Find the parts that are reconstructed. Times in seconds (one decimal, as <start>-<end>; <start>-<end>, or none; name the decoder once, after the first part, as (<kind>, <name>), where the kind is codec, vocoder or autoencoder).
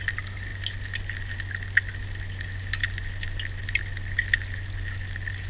none